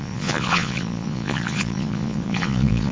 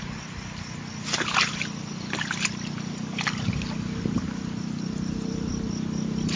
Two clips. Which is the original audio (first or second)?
second